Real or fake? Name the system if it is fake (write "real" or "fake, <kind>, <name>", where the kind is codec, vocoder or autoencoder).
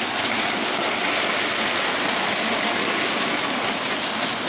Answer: real